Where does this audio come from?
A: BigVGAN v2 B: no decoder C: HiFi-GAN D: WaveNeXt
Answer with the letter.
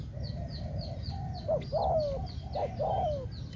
B